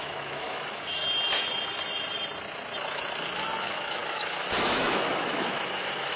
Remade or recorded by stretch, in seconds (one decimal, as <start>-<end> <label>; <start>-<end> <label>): 0.0-1.0 remade; 1.0-3.6 recorded; 3.6-6.2 remade